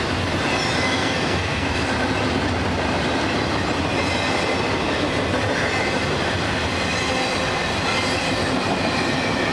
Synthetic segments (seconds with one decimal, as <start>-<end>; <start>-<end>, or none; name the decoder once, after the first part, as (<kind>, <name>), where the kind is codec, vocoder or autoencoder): 0.8-1.9 (codec, SNAC)